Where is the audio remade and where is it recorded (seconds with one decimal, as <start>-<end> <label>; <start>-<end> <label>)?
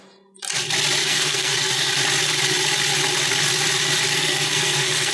0.0-1.0 recorded; 1.0-1.9 remade; 1.9-4.1 recorded; 4.1-5.1 remade